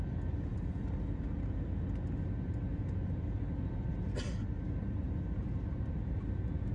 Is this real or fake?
real